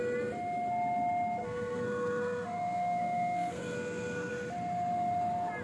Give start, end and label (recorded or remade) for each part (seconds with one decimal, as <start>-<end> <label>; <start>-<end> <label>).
0.0-1.4 recorded; 1.4-4.3 remade; 4.3-5.6 recorded